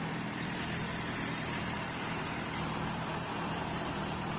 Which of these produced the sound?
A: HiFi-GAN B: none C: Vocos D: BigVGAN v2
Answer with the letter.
D